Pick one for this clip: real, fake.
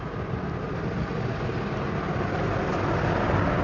real